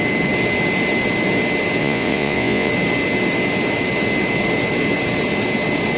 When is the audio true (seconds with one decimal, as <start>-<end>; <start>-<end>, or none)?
0.0-1.8; 2.7-6.0